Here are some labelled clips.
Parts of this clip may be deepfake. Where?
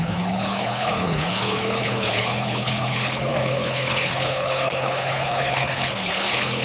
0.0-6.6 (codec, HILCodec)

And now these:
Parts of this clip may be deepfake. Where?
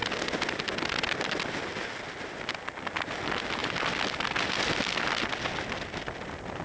none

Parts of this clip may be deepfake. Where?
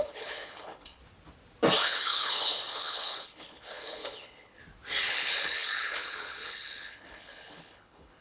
0.0-1.0 (codec, HILCodec); 1.8-4.6; 5.1-8.2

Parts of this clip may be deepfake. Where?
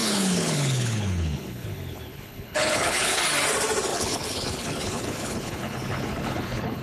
0.0-3.2 (codec, HILCodec); 3.9-6.8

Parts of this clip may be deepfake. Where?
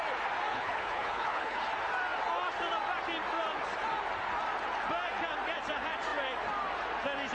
0.5-1.6 (codec, HILCodec)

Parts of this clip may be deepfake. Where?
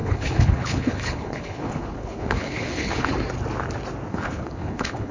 0.0-3.1 (codec, HILCodec); 4.1-5.1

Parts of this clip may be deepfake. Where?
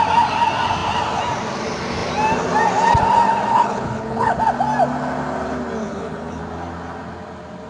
3.5-4.4 (codec, HILCodec); 5.8-6.4